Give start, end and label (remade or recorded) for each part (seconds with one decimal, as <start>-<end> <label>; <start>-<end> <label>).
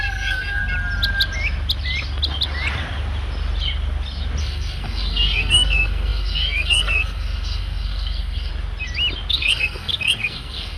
0.0-0.6 remade; 0.6-4.4 recorded; 4.4-8.5 remade; 8.5-9.3 recorded; 9.3-10.8 remade